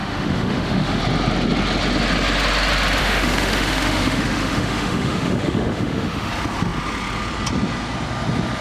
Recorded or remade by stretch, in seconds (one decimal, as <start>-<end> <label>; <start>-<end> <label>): 0.0-1.0 remade; 1.0-3.0 recorded; 3.0-6.3 remade; 6.3-8.6 recorded